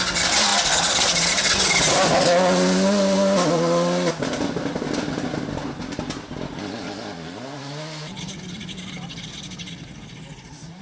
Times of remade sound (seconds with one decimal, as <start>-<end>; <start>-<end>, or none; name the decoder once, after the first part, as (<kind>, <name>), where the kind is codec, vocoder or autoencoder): none